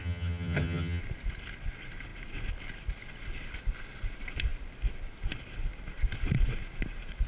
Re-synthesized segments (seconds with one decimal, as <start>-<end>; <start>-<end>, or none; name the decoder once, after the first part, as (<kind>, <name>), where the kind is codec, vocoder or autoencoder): 0.0-1.0 (vocoder, HiFi-GAN)